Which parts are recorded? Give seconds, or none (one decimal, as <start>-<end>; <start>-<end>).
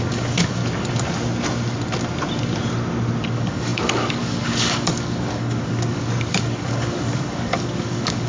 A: 0.6-3.3